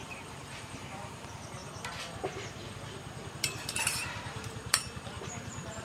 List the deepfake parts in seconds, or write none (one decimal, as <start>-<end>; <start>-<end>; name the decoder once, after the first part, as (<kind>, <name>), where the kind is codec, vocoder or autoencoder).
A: 0.0-1.6 (vocoder, BigVGAN v2); 3.3-5.8